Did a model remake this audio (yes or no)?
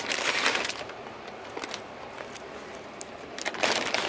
no